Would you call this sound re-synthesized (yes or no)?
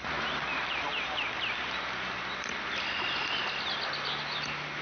no